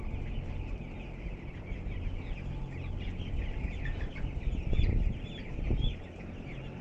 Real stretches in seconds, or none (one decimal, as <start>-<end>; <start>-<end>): 0.0-1.3; 1.9-6.8

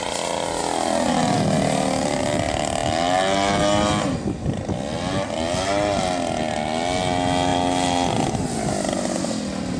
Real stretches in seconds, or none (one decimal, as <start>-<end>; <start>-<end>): 0.0-9.8